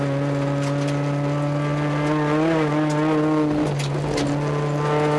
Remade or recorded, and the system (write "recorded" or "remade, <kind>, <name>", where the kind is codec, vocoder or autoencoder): recorded